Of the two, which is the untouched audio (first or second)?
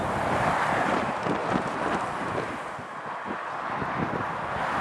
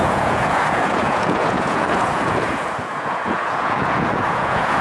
first